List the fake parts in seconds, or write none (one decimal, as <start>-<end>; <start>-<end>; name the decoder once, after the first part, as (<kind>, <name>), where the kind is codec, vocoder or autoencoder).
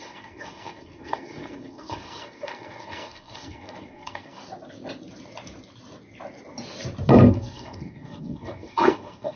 0.0-4.4 (codec, SNAC); 7.3-9.4